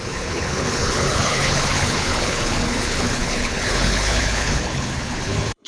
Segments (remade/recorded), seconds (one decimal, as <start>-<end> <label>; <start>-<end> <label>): 0.0-5.7 remade